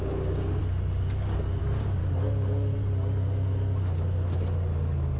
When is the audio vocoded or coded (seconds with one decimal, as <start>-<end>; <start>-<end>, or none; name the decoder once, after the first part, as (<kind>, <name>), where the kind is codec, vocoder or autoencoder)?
0.0-0.6 (codec, DAC); 1.6-2.0